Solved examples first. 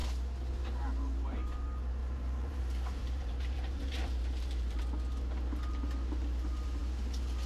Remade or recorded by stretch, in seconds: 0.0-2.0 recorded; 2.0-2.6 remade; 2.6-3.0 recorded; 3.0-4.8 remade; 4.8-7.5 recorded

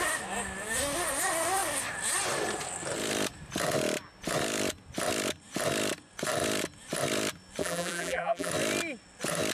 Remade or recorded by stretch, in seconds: 0.0-7.6 recorded; 7.6-8.5 remade; 8.5-9.5 recorded

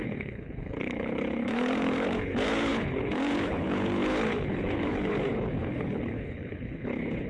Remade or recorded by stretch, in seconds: 0.0-7.3 remade